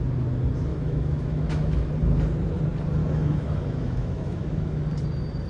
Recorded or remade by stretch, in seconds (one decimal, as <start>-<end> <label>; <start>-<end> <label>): 0.0-0.7 recorded; 0.7-1.9 remade; 1.9-3.0 recorded; 3.0-4.8 remade; 4.8-5.5 recorded